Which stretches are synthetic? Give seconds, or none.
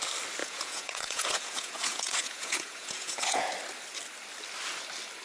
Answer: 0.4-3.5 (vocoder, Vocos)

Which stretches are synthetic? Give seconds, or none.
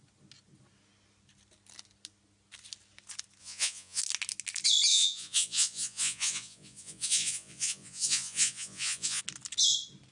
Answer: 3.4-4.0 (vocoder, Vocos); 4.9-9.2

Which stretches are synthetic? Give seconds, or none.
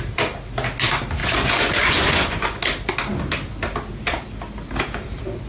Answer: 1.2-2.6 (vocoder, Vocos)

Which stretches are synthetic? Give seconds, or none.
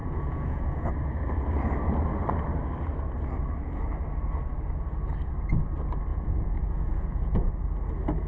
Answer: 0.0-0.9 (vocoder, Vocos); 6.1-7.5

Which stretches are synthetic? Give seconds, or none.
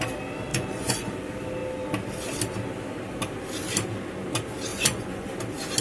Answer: 0.5-1.1 (vocoder, Vocos); 4.7-5.3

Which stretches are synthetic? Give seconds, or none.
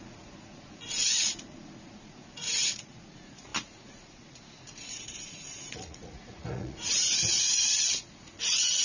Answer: 0.0-8.8 (vocoder, Vocos)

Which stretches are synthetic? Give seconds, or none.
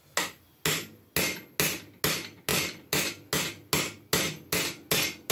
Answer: none